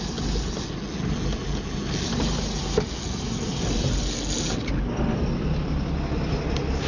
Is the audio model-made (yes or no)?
no